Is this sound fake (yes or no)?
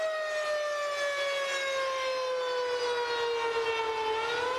no